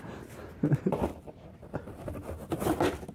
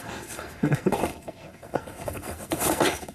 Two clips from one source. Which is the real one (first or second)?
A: first